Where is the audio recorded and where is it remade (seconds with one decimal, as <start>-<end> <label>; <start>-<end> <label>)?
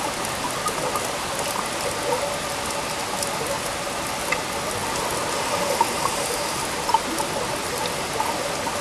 0.0-8.8 recorded